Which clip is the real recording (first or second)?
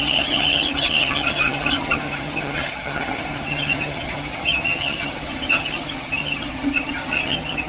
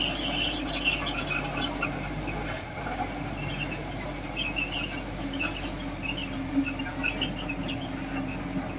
second